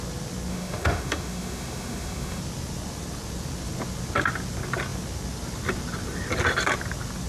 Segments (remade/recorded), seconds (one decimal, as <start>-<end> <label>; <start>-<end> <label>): 0.0-0.5 recorded; 0.5-2.4 remade; 2.4-7.3 recorded